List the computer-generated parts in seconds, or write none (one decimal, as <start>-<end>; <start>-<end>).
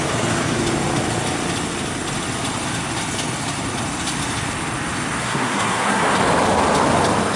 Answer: 5.2-6.0